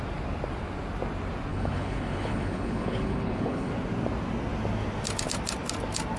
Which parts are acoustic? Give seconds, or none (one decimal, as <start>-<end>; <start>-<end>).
0.0-1.5; 3.7-6.2